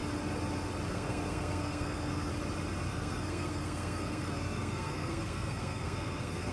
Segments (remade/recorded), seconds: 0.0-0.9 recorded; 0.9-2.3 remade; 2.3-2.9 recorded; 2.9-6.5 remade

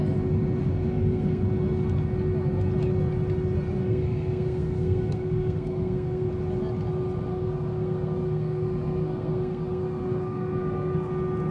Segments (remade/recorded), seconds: 0.0-0.7 recorded; 0.7-1.4 remade; 1.4-3.8 recorded; 3.8-6.3 remade; 6.3-7.3 recorded; 7.3-11.1 remade; 11.1-11.5 recorded

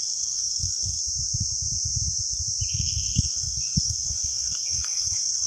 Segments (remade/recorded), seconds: 0.0-1.0 remade; 1.0-2.7 recorded; 2.7-5.5 remade

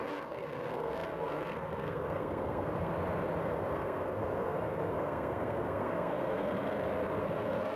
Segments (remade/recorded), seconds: 0.0-2.9 remade; 2.9-3.4 recorded; 3.4-6.5 remade; 6.5-7.2 recorded; 7.2-7.8 remade

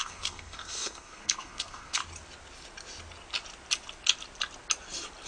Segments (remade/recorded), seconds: 0.0-2.0 remade; 2.0-5.3 recorded

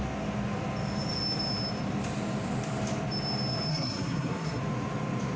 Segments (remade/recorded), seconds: 0.0-3.7 recorded; 3.7-4.6 remade; 4.6-5.4 recorded

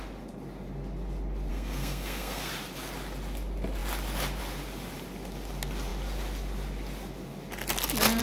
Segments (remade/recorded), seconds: 0.0-1.5 recorded; 1.5-2.5 remade; 2.5-8.2 recorded

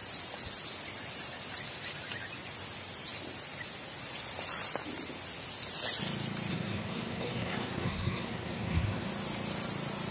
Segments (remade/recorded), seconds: 0.0-6.5 recorded; 6.5-9.1 remade; 9.1-10.1 recorded